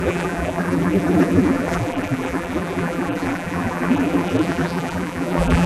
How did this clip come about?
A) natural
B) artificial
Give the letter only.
B